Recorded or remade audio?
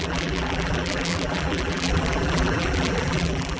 remade